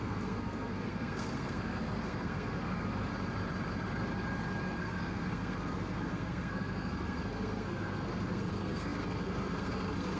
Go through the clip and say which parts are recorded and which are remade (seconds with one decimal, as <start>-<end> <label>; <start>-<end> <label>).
0.0-3.1 remade; 3.1-4.8 recorded; 4.8-10.2 remade